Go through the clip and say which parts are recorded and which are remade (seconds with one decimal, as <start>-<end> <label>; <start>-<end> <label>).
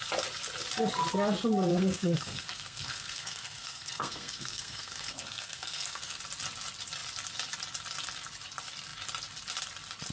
0.0-1.7 recorded; 1.7-6.2 remade; 6.2-10.1 recorded